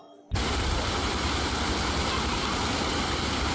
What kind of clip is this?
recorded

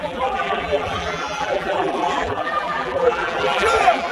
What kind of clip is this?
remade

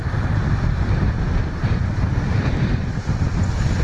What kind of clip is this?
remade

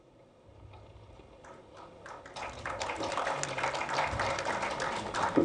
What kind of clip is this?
recorded